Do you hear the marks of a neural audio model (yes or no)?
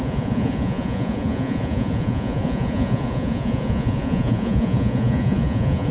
yes